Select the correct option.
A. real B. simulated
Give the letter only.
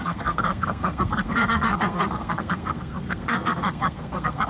B